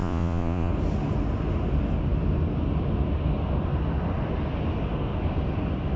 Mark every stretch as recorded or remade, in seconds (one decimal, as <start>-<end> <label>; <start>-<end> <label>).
0.0-0.7 remade; 0.7-6.0 recorded